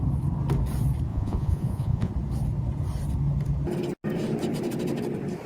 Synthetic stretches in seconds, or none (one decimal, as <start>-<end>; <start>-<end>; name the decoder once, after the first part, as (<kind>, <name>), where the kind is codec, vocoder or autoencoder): 1.1-2.1 (vocoder, Vocos)